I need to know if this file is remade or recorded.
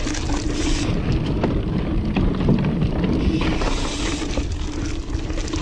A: recorded